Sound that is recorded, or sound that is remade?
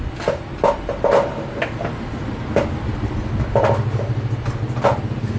recorded